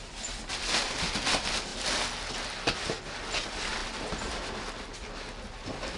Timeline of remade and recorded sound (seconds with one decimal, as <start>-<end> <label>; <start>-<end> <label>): 0.0-6.0 recorded